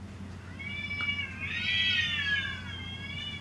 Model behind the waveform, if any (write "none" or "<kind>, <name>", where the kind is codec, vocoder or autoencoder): none